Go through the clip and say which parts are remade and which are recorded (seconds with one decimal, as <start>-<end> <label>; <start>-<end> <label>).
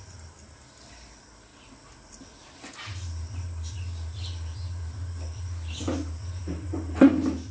0.0-7.5 recorded